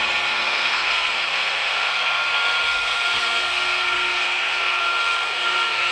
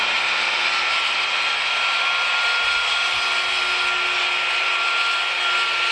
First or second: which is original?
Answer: second